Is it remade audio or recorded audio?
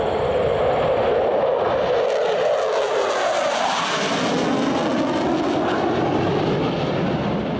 recorded